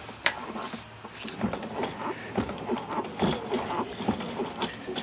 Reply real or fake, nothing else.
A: real